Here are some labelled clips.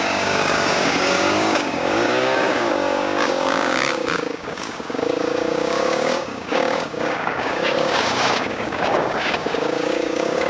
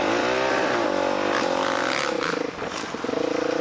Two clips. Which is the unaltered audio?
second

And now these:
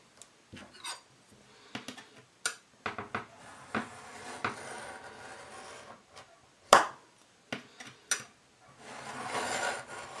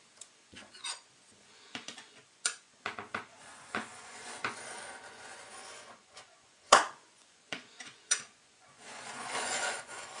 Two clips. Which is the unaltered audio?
first